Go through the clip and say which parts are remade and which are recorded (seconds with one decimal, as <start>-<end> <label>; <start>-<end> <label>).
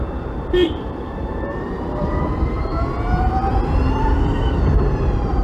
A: 0.0-2.7 remade; 2.7-3.6 recorded; 3.6-5.4 remade